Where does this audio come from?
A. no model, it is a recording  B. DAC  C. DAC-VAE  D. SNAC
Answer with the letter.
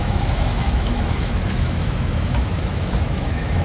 C